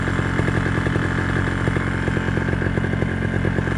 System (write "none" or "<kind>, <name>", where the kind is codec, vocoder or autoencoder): none